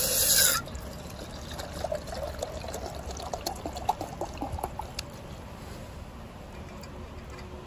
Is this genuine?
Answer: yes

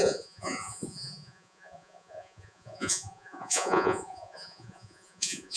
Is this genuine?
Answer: no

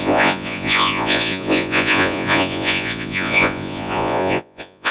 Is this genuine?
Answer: no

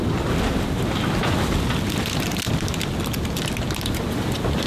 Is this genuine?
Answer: yes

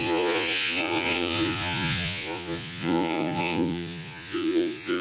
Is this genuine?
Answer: no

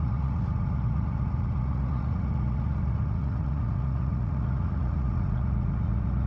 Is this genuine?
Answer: no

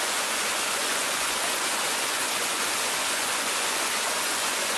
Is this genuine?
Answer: no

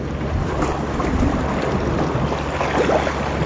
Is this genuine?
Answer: yes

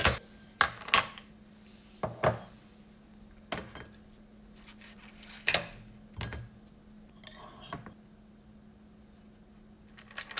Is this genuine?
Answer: yes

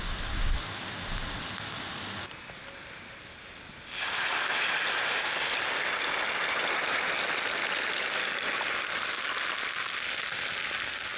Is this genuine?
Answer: yes